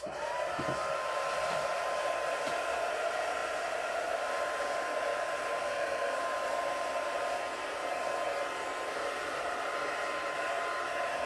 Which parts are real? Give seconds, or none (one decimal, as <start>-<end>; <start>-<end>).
0.0-5.6; 6.2-11.3